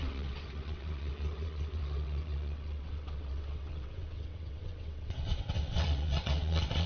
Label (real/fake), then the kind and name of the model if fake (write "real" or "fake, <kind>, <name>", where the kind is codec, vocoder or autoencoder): fake, vocoder, WaveNeXt